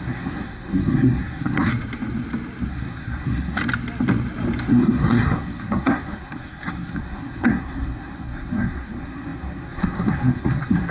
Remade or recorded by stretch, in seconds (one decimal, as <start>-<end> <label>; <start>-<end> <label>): 0.0-1.7 remade; 1.7-2.7 recorded; 2.7-3.6 remade; 3.6-4.7 recorded; 4.7-10.9 remade